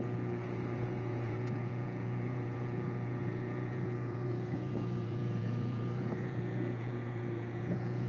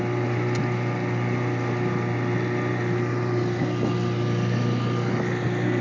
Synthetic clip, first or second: first